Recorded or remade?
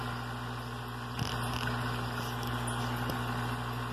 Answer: recorded